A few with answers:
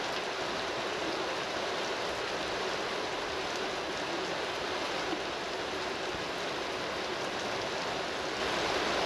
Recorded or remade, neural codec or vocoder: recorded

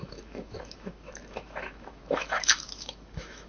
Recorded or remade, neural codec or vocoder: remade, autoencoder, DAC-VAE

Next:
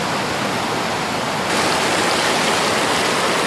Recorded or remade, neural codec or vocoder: recorded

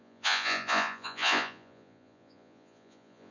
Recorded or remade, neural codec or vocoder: remade, vocoder, Vocos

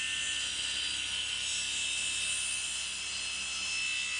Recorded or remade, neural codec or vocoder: recorded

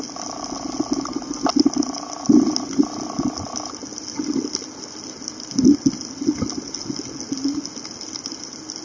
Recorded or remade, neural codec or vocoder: recorded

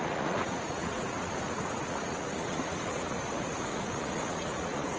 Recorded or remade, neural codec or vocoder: remade, vocoder, Vocos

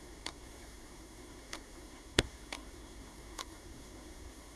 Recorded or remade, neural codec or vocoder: remade, codec, SNAC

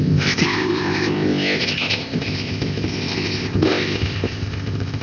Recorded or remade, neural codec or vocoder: remade, codec, ZipCodec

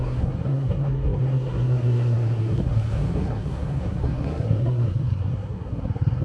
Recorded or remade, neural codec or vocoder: remade, codec, SNAC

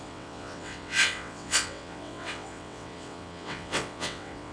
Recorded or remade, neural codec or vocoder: remade, vocoder, WaveNeXt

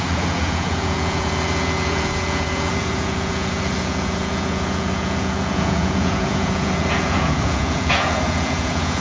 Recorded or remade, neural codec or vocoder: remade, vocoder, Vocos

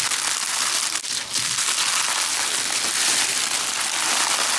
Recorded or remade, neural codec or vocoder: recorded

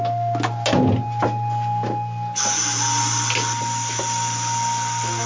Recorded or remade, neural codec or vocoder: recorded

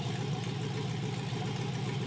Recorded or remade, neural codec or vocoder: recorded